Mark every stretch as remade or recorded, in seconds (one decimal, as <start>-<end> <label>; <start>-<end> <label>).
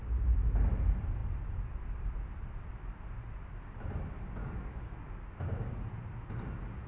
0.0-4.4 recorded; 4.4-5.7 remade; 5.7-6.9 recorded